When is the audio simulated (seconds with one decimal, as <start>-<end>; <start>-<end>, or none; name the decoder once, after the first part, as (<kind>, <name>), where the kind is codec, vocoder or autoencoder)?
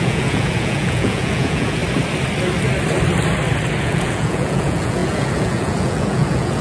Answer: 0.0-1.8 (vocoder, Vocos); 3.8-6.6